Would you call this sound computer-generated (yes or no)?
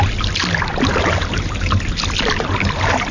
no